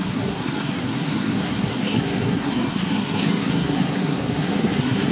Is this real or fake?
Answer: fake